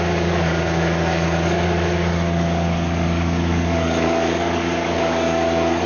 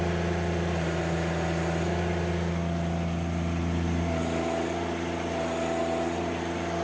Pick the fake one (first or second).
first